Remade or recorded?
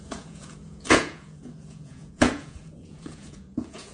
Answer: remade